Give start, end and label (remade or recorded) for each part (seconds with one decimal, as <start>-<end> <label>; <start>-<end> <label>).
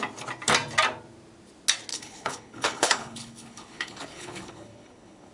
0.0-1.9 recorded; 1.9-5.3 remade